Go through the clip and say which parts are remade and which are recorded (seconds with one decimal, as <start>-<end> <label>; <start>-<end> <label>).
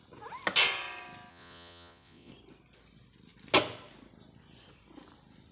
0.0-1.3 recorded; 1.3-2.3 remade; 2.3-5.5 recorded